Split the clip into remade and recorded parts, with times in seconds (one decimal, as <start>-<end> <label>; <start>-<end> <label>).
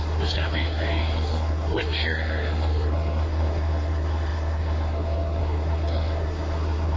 0.0-7.0 remade